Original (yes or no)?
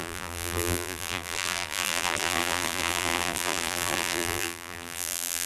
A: no